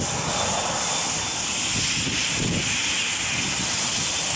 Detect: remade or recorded recorded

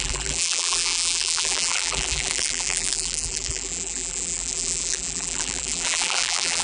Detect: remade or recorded remade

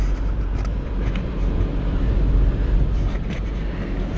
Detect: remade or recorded remade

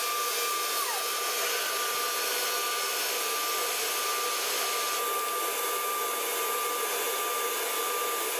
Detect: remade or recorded recorded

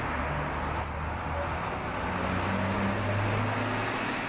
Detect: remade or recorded recorded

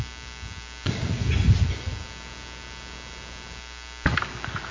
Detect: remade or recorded recorded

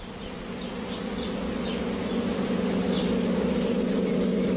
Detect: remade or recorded recorded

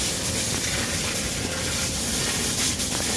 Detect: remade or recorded recorded